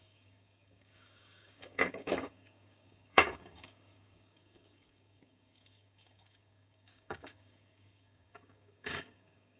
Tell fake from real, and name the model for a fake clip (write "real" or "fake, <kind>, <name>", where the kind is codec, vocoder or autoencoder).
fake, codec, DAC